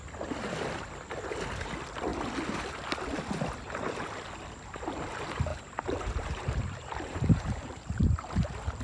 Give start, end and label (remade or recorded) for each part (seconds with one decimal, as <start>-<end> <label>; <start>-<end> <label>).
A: 0.0-5.5 recorded; 5.5-8.8 remade